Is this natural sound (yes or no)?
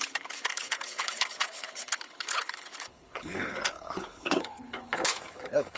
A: no